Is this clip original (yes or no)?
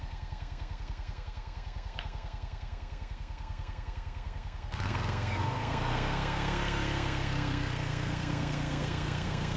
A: no